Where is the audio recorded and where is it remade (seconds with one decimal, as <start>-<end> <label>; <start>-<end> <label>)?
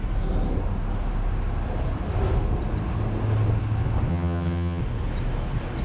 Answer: 0.0-4.1 recorded; 4.1-4.8 remade; 4.8-5.8 recorded